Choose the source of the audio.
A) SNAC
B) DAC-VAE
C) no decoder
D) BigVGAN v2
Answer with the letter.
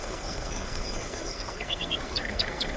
A